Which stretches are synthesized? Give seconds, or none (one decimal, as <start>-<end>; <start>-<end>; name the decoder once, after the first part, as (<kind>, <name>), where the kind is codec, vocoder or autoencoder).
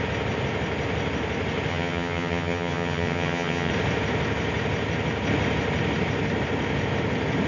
1.7-3.7 (vocoder, HiFi-GAN)